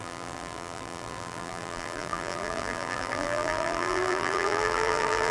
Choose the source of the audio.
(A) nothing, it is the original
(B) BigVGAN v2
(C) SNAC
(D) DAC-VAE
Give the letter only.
B